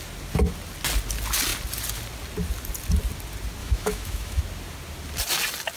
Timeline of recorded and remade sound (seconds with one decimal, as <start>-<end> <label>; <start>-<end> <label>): 0.0-3.6 recorded; 3.6-4.4 remade; 4.4-5.8 recorded